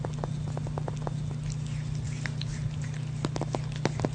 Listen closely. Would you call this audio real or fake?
real